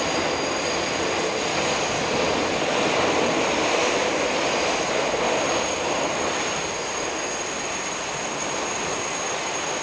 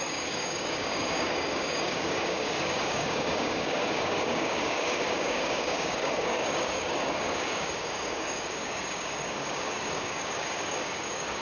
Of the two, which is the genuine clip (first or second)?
first